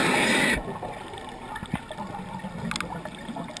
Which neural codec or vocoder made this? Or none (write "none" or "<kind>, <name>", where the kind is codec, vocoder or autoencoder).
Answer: none